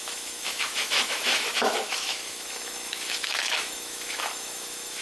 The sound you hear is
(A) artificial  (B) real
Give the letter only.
A